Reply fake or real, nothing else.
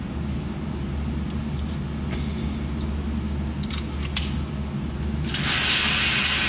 real